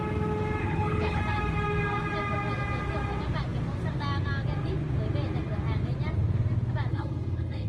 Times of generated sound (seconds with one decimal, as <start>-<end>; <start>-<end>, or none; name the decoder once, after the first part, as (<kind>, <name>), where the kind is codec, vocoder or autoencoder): 0.6-1.2 (codec, HILCodec); 6.9-7.7